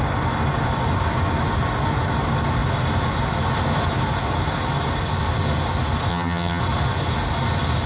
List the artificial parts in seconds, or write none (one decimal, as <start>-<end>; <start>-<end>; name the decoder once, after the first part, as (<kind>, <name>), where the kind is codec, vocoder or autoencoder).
6.1-6.6 (vocoder, HiFi-GAN)